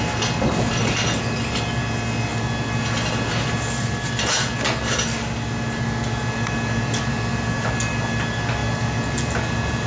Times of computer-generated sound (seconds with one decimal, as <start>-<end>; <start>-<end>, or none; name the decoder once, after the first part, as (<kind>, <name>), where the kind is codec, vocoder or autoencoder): none